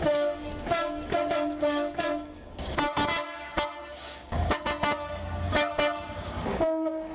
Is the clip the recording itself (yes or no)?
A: no